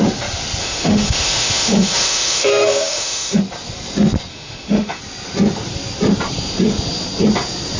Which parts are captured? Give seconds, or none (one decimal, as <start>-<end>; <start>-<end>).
0.0-0.6; 3.4-4.3; 5.0-7.8